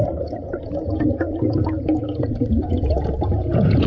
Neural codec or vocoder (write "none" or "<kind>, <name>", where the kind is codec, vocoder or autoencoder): vocoder, Vocos